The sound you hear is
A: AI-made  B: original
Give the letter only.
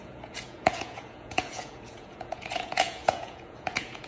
A